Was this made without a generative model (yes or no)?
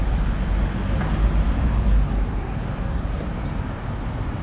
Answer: yes